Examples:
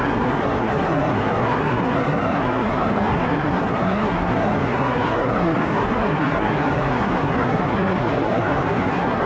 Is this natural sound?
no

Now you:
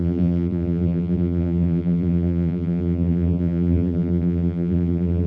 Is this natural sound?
no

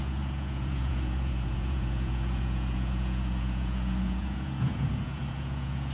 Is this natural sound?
no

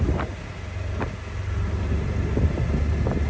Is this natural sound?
yes